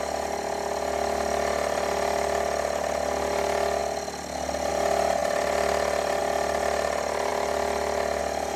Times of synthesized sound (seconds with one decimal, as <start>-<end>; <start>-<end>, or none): none